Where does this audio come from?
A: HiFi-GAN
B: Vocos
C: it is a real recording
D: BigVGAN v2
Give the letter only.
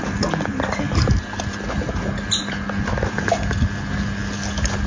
C